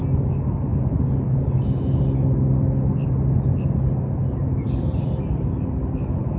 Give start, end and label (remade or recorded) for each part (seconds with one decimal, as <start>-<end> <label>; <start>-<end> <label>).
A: 0.0-6.4 recorded